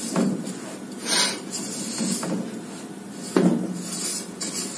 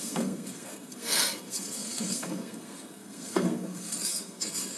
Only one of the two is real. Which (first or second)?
first